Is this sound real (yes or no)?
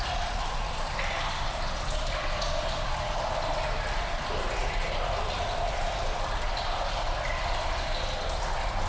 yes